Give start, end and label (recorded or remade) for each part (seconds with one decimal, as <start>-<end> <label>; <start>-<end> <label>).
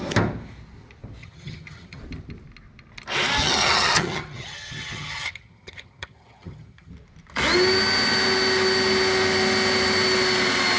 0.0-1.2 recorded; 1.2-2.0 remade; 2.0-3.4 recorded; 3.4-6.9 remade; 6.9-10.8 recorded